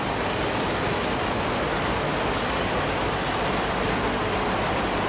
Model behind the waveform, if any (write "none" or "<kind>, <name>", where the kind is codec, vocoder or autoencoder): none